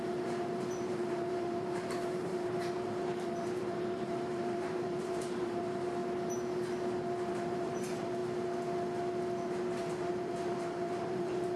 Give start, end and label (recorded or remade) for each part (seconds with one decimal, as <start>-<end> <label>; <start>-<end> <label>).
0.0-6.0 remade; 6.0-7.3 recorded; 7.3-8.2 remade; 8.2-10.1 recorded; 10.1-11.6 remade